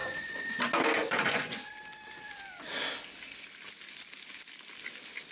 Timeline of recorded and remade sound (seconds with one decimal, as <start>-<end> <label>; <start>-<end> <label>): 0.0-0.6 remade; 0.6-1.0 recorded; 1.0-1.7 remade; 1.7-5.3 recorded